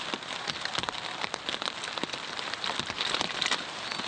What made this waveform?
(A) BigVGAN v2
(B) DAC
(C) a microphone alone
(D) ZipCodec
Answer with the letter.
A